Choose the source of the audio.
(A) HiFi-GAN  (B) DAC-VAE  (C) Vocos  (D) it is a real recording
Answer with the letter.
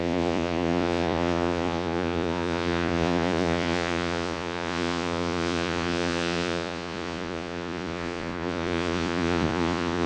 C